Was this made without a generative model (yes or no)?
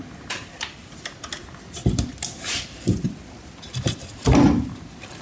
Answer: yes